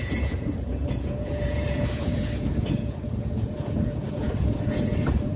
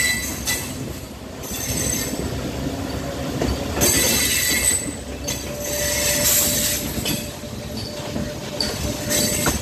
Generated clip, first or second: first